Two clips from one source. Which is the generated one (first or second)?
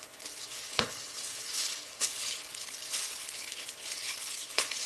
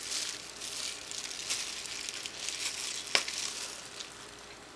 first